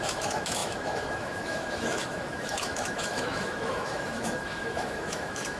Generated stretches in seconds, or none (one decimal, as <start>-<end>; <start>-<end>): 0.0-5.6